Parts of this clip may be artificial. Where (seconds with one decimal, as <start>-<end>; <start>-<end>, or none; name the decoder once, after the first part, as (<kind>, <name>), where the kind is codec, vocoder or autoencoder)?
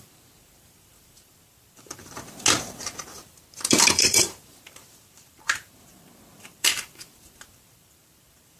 0.0-2.0 (vocoder, BigVGAN v2); 3.7-8.6